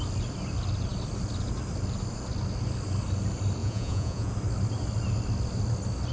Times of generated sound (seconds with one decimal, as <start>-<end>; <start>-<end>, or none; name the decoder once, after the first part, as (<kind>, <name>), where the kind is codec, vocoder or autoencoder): 3.6-4.3 (vocoder, Vocos)